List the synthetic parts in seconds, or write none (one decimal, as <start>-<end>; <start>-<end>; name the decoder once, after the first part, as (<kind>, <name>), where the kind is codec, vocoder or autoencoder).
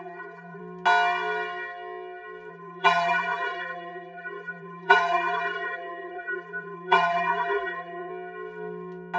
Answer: 0.0-0.6 (vocoder, BigVGAN v2); 2.5-8.1